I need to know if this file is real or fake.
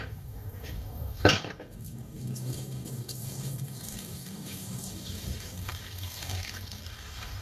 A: fake